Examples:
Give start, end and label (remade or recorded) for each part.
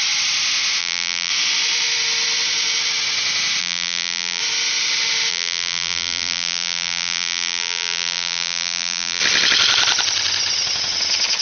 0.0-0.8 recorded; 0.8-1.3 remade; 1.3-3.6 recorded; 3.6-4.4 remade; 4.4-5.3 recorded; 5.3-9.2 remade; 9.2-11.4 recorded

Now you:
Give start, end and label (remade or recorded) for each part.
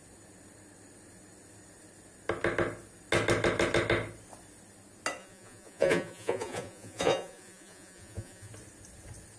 0.0-5.2 recorded; 5.2-8.5 remade; 8.5-9.4 recorded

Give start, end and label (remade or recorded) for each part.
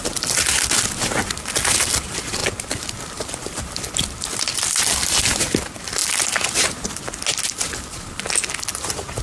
0.0-9.2 recorded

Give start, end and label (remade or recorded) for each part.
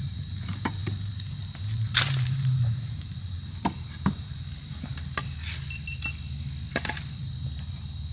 0.0-4.9 remade; 4.9-6.9 recorded; 6.9-8.1 remade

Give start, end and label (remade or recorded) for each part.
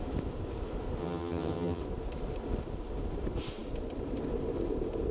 0.0-1.0 recorded; 1.0-1.8 remade; 1.8-5.1 recorded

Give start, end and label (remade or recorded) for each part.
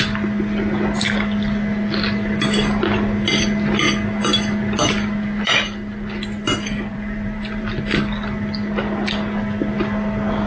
0.0-6.9 recorded; 6.9-7.7 remade; 7.7-10.5 recorded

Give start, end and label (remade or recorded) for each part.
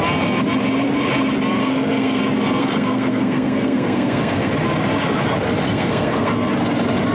0.0-1.6 recorded; 1.6-2.2 remade; 2.2-2.6 recorded; 2.6-4.5 remade; 4.5-5.7 recorded; 5.7-6.3 remade; 6.3-7.1 recorded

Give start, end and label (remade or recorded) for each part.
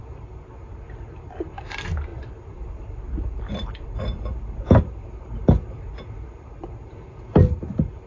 0.0-2.1 recorded; 2.1-5.2 remade; 5.2-8.1 recorded